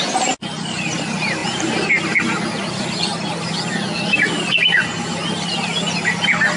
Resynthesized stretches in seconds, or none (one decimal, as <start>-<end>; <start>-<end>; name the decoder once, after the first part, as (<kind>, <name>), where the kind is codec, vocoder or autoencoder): none